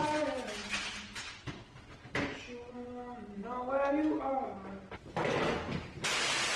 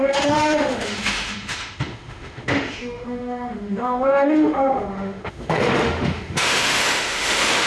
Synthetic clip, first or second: second